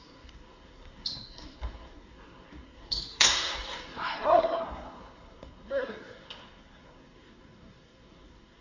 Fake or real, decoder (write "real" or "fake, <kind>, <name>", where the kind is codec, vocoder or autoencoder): fake, codec, SNAC